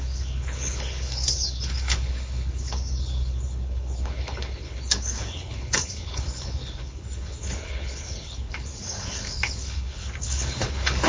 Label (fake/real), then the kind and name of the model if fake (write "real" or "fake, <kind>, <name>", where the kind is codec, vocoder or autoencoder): fake, codec, HILCodec